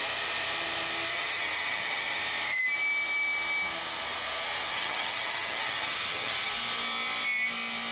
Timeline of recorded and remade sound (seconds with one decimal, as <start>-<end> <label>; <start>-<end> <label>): 0.0-1.1 recorded; 1.1-2.2 remade; 2.2-4.7 recorded; 4.7-6.5 remade; 6.5-7.9 recorded